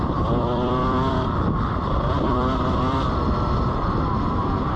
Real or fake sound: fake